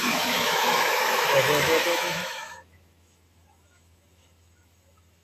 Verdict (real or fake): fake